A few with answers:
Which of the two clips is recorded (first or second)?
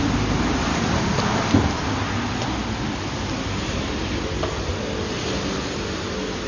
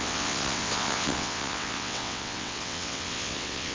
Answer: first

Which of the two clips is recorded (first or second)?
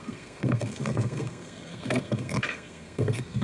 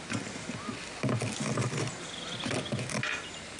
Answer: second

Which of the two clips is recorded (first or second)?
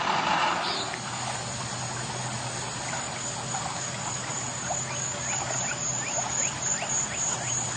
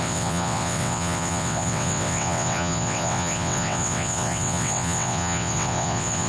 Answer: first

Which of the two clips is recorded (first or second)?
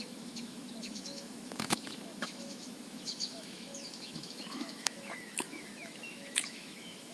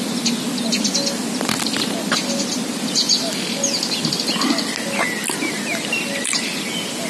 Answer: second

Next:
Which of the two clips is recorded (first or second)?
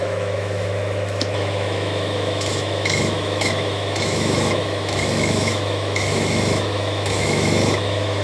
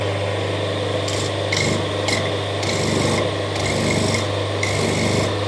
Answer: second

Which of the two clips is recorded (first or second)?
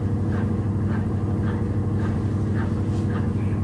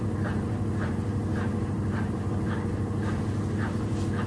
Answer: first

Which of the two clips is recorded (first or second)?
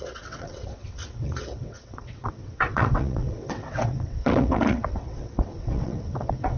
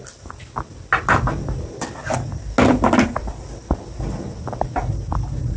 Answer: second